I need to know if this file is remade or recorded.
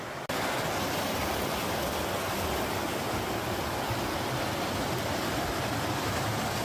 recorded